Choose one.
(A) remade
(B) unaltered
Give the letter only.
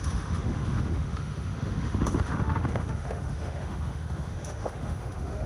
A